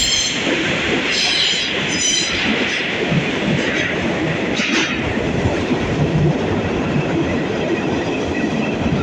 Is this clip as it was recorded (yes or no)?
no